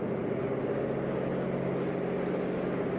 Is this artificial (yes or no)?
no